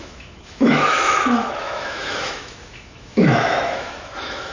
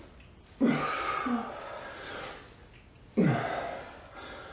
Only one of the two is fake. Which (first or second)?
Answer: first